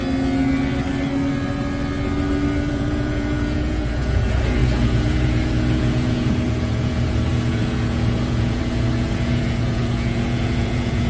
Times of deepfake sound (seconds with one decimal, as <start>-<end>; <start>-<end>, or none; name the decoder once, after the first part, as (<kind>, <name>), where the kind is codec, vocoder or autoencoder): 2.7-11.1 (vocoder, Vocos)